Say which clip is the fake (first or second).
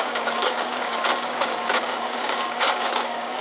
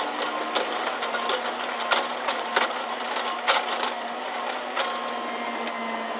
first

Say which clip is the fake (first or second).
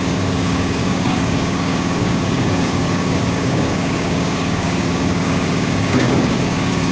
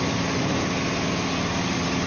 first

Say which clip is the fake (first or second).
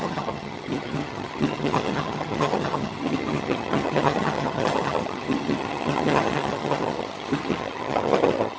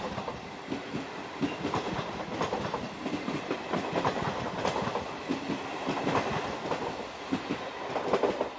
first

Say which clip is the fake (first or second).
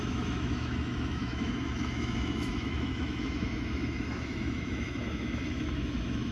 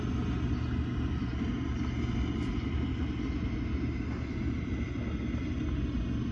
first